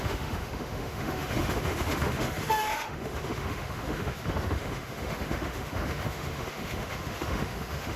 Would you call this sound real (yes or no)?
no